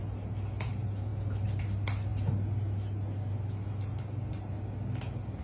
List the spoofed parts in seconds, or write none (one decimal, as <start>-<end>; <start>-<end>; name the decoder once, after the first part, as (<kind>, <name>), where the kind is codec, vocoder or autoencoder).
none